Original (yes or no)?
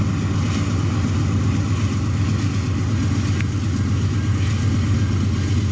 yes